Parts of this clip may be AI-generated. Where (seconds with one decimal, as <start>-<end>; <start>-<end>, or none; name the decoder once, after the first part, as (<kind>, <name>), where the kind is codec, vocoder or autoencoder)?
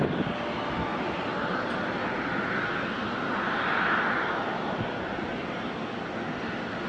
0.9-2.0 (vocoder, BigVGAN v2)